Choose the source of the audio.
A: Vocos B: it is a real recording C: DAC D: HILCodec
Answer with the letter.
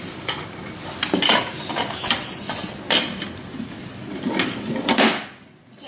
B